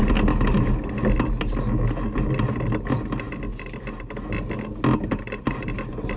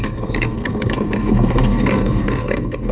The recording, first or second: first